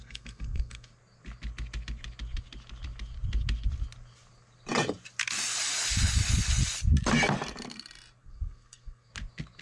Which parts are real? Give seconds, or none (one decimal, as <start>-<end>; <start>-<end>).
0.9-8.2; 9.1-9.6